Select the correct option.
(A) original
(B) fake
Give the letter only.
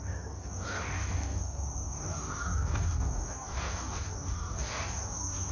B